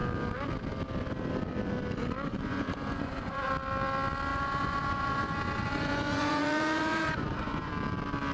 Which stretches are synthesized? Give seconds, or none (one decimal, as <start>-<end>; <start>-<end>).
2.3-3.5; 4.3-7.7